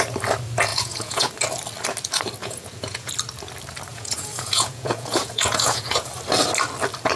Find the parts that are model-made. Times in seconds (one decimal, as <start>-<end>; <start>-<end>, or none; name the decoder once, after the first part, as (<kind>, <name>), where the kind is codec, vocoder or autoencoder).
0.7-1.3 (vocoder, Vocos); 2.4-3.1; 3.9-6.1